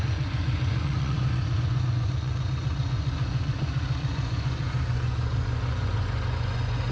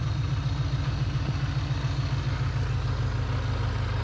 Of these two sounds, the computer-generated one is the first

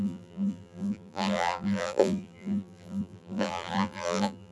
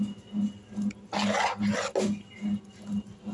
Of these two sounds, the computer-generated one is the first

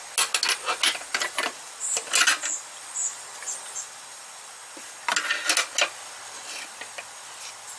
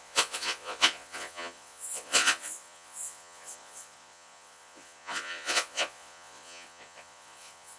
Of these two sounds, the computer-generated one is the second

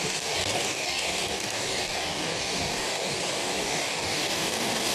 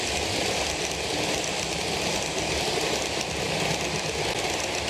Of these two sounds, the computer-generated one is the first